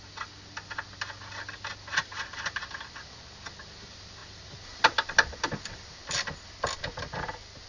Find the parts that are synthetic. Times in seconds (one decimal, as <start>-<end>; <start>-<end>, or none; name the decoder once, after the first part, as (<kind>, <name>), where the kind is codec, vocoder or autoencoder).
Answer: none